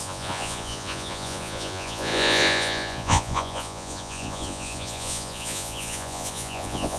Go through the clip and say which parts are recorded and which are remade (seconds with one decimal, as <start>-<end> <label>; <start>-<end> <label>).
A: 0.0-7.0 remade